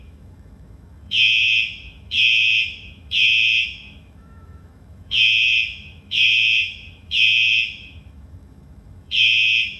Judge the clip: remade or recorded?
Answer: remade